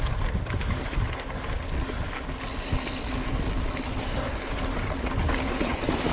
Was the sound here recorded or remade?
recorded